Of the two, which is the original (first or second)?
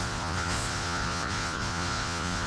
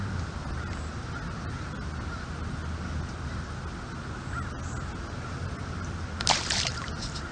second